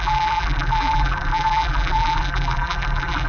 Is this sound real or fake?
fake